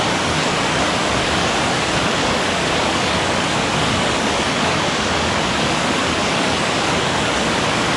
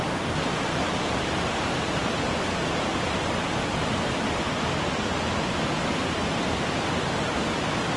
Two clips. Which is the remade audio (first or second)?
first